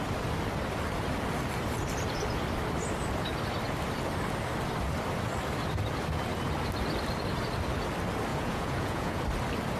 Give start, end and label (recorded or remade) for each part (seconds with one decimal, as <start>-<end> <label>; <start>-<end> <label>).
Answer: 0.0-8.3 recorded; 8.3-9.2 remade; 9.2-9.8 recorded